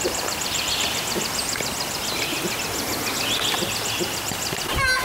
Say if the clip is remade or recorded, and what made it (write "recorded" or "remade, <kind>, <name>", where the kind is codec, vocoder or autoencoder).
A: recorded